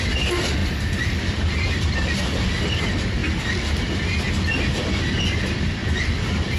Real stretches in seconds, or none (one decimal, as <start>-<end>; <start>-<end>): 0.6-1.2; 3.2-5.2